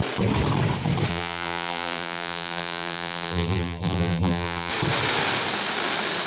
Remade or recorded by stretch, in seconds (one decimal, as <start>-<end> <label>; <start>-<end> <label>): 0.0-1.1 recorded; 1.1-4.7 remade; 4.7-6.3 recorded